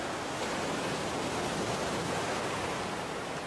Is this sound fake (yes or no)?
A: no